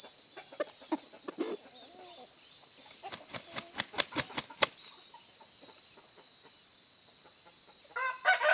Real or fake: real